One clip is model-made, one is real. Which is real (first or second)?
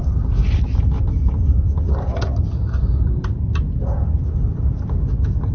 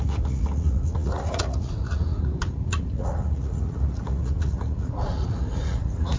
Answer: first